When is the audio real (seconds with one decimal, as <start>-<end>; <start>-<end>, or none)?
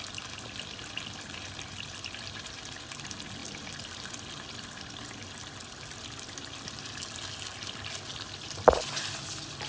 0.0-9.7